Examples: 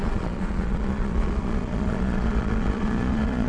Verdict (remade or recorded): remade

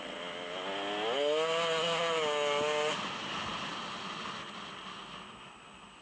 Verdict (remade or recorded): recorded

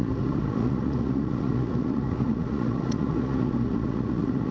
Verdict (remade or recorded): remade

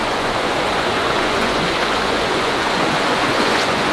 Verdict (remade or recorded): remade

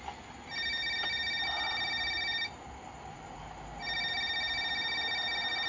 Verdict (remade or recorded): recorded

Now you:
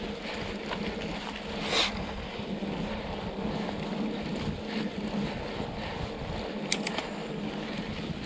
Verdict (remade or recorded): recorded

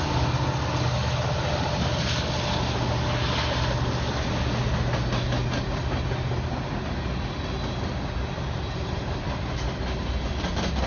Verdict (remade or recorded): recorded